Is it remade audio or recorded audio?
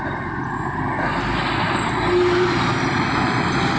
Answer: remade